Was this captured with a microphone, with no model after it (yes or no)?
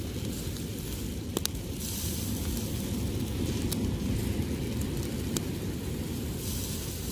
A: yes